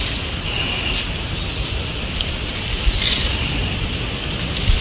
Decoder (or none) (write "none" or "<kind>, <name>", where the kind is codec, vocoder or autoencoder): none